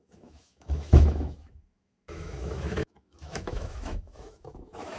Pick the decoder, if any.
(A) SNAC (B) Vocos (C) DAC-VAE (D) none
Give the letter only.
C